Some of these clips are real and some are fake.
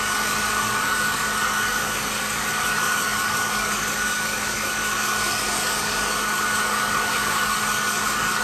fake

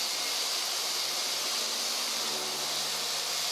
real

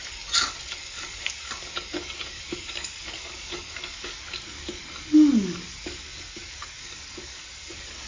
fake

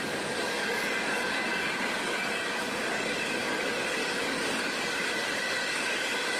fake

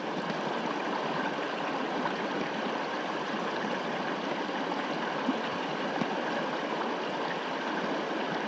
real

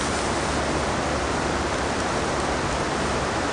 real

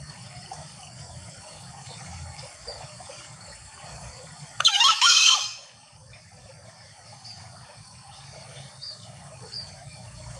fake